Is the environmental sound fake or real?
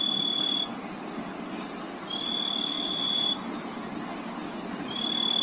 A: real